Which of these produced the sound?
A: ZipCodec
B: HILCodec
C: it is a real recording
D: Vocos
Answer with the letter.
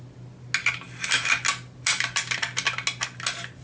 C